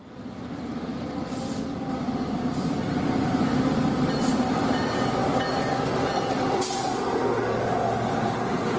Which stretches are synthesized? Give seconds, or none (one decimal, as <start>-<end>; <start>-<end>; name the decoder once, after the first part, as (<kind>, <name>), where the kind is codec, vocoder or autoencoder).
0.9-4.5 (vocoder, BigVGAN v2); 5.2-7.0